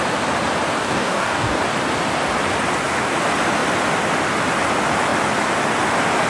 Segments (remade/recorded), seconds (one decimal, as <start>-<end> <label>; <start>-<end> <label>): 0.0-0.8 recorded; 0.8-1.6 remade; 1.6-6.3 recorded